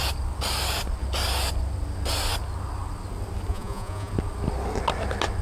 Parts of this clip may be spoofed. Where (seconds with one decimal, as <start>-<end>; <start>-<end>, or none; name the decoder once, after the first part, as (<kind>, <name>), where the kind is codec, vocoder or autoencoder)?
3.5-4.1 (vocoder, Vocos)